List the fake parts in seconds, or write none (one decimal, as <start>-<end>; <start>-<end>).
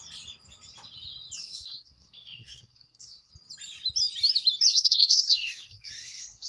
1.4-3.3; 4.7-6.5